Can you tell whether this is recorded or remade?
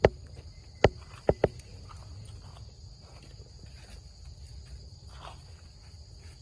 recorded